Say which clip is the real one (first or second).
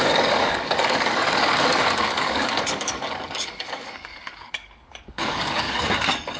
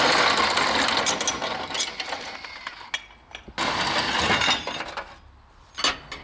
second